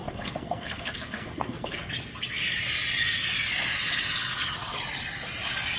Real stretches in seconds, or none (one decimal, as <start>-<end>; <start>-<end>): 1.9-5.8

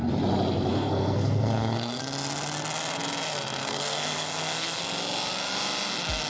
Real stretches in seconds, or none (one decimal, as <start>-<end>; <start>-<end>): 0.0-0.7; 2.0-3.6; 4.8-6.3

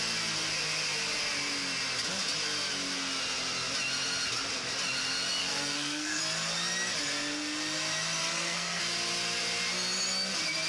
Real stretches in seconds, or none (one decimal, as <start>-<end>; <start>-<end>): 0.0-5.4; 6.2-8.2; 8.8-10.7

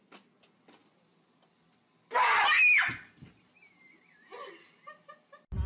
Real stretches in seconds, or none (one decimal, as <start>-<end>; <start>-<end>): 0.0-5.7

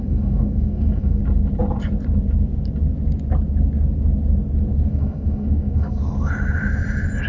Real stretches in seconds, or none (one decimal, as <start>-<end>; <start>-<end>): 1.2-4.9; 6.0-7.3